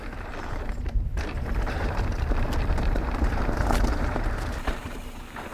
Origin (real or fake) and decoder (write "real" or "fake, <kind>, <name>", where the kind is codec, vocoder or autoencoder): fake, vocoder, BigVGAN v2